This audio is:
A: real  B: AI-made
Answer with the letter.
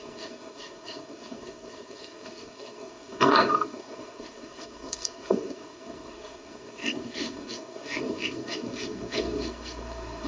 B